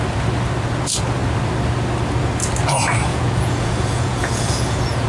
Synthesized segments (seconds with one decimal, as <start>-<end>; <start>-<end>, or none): 3.1-5.1